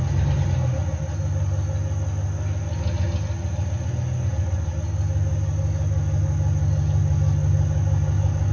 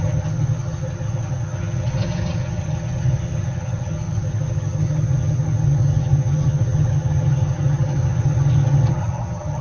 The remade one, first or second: second